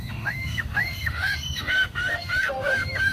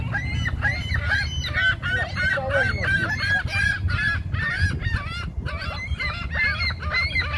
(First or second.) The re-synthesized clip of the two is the first